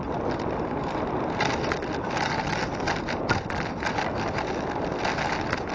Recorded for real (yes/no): yes